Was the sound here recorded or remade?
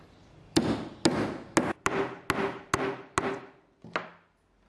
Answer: recorded